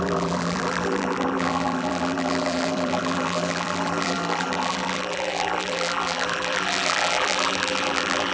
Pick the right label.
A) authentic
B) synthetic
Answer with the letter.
B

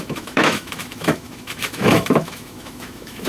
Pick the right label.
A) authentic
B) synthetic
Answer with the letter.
B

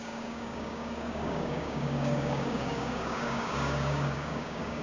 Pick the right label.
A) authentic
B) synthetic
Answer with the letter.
B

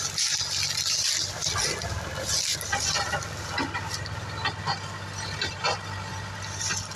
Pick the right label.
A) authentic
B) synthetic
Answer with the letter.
A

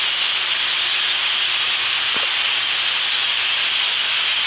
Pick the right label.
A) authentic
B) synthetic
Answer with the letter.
A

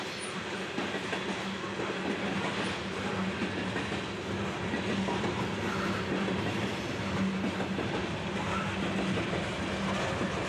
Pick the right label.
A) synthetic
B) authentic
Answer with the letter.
B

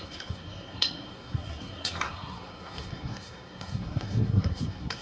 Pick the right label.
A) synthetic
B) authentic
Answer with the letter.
A